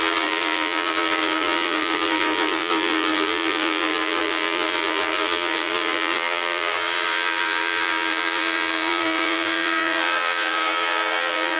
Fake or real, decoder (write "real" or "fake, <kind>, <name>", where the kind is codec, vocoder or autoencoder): fake, vocoder, BigVGAN v2